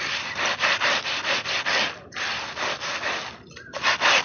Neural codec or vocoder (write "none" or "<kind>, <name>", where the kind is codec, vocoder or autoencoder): none